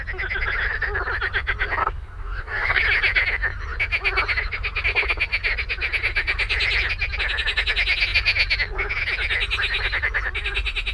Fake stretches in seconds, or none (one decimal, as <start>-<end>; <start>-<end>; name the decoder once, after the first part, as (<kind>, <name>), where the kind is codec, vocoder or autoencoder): 1.8-2.8 (codec, DAC)